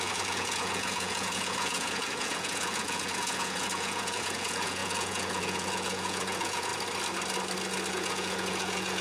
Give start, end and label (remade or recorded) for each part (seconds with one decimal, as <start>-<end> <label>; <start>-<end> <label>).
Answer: 0.0-6.7 remade; 6.7-7.9 recorded; 7.9-9.0 remade

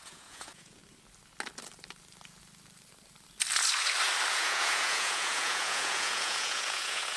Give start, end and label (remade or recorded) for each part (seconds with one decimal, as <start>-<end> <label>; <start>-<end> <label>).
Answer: 0.0-0.8 remade; 0.8-4.3 recorded; 4.3-7.2 remade

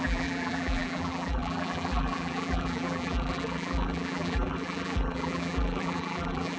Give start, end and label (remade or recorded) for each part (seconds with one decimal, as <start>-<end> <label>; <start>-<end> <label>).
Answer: 0.0-6.6 remade

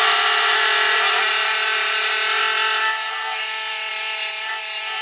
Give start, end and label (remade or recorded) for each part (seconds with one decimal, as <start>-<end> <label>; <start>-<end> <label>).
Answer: 0.0-5.0 remade

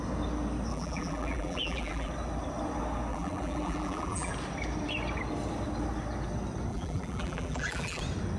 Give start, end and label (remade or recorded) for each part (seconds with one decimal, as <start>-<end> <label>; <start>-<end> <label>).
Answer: 0.0-0.7 recorded; 0.7-2.1 remade; 2.1-3.1 recorded; 3.1-4.3 remade; 4.3-6.7 recorded; 6.7-8.0 remade; 8.0-8.4 recorded